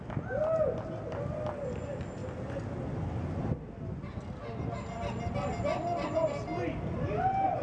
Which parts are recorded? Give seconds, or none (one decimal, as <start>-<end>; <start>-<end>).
0.0-7.6